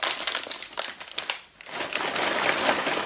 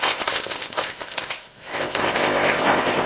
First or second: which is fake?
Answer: second